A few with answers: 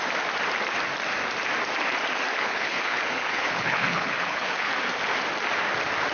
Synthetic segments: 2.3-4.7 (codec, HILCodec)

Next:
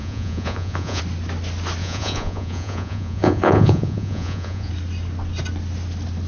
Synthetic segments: 0.0-1.0 (vocoder, Vocos); 1.8-4.7

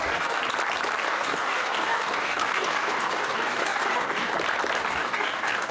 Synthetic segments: 0.0-0.4 (codec, DAC); 1.0-4.3; 4.9-5.7